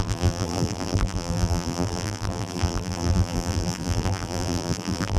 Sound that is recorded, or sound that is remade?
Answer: remade